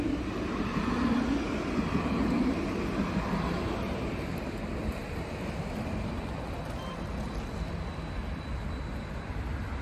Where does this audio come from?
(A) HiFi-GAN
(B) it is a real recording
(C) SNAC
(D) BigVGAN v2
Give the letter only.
B